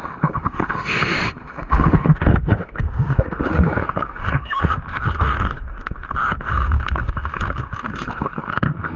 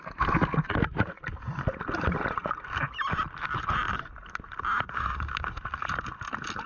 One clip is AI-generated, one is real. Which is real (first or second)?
second